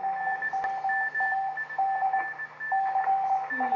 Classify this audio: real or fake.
real